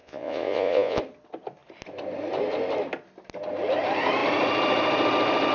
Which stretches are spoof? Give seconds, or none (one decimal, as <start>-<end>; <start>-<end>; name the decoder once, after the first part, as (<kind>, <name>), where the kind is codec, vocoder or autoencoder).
0.0-1.0 (vocoder, Vocos)